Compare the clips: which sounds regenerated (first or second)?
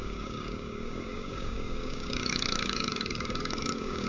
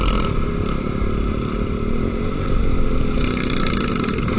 first